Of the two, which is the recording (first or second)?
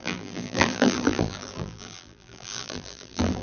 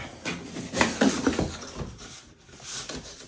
second